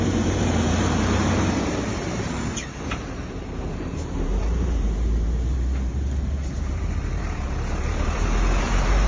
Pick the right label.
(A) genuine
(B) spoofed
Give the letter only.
B